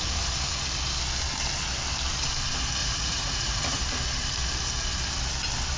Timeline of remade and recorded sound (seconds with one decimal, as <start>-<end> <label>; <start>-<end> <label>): 0.0-2.8 recorded; 2.8-3.8 remade; 3.8-5.8 recorded